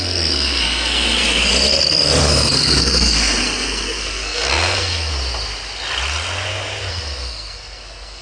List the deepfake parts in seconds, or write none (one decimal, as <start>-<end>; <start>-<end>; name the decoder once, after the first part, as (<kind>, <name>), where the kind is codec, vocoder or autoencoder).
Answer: 0.0-1.5 (codec, SNAC); 2.2-5.1; 6.9-8.2